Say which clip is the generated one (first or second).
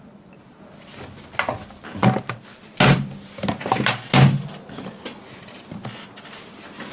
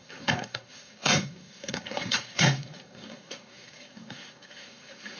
second